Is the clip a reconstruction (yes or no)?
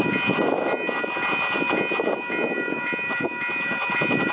no